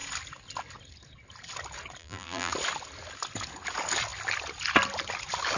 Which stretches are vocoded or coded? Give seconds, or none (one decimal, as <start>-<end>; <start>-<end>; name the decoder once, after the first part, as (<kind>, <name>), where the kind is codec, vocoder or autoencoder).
2.0-2.5 (vocoder, BigVGAN v2)